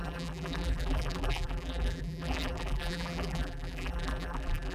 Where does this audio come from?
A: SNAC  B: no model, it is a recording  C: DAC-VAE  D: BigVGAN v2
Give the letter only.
D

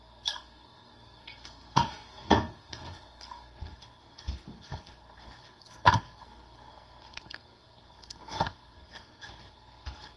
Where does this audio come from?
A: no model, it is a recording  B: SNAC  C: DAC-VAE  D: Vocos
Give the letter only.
B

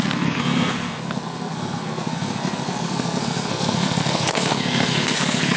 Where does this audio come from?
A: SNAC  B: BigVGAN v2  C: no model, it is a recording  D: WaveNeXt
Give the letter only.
A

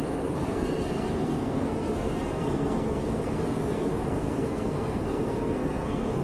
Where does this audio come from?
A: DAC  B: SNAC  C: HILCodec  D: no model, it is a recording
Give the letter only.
B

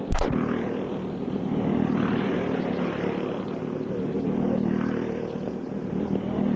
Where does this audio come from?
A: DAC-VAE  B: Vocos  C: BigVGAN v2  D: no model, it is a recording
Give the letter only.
D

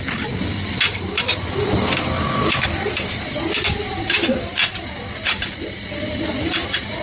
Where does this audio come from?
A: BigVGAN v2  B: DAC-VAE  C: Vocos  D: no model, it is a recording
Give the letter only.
D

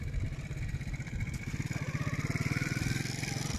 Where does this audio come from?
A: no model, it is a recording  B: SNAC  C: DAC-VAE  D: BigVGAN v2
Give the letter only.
D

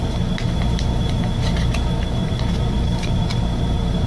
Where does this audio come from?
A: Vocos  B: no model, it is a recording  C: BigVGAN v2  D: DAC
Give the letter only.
C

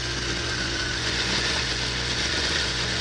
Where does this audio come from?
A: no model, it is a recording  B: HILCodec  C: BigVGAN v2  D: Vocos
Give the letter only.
D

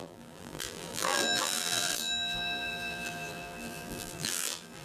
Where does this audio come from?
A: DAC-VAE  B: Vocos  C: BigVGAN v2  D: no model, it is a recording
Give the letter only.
C